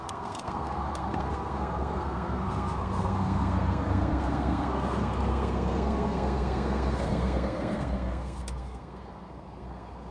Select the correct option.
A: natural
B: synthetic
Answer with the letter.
B